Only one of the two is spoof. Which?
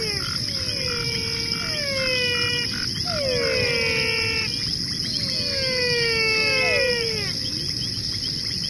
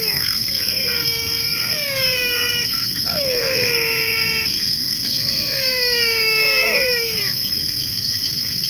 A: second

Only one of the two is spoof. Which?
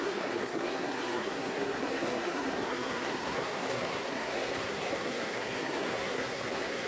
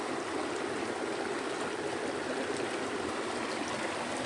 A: first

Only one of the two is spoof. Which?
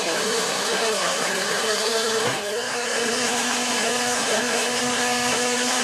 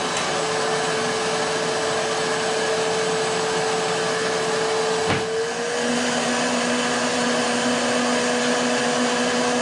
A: first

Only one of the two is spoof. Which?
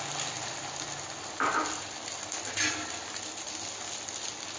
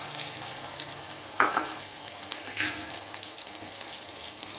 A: second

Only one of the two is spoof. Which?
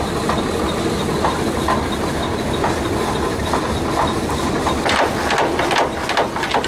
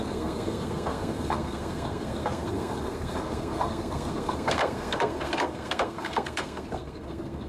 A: second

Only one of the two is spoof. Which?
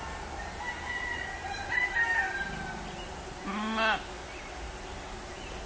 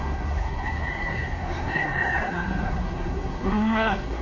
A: second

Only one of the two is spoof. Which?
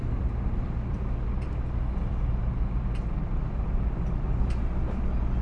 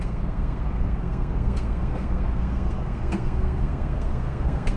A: second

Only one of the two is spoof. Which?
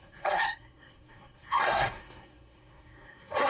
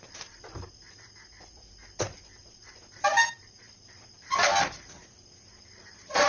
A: first